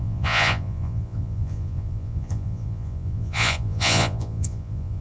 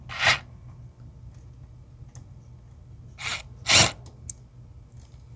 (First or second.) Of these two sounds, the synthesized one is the first